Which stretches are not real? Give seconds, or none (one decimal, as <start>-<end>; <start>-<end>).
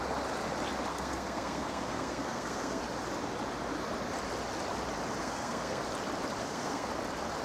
0.9-2.8; 5.2-5.8; 6.4-6.9